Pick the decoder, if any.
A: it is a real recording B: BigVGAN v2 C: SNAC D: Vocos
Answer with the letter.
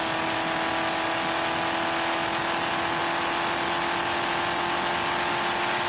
A